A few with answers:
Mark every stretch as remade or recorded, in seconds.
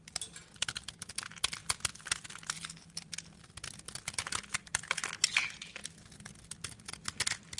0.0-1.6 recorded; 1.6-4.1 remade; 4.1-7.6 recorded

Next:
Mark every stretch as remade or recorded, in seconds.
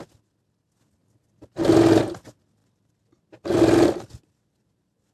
0.0-5.1 recorded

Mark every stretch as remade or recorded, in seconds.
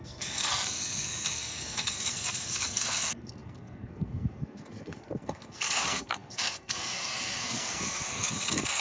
0.0-8.8 remade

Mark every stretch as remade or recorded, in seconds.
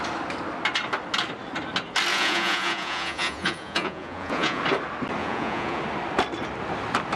0.0-2.1 recorded; 2.1-4.6 remade; 4.6-5.2 recorded; 5.2-5.8 remade; 5.8-7.2 recorded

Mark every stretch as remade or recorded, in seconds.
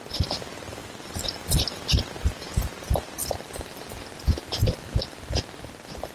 0.0-6.1 recorded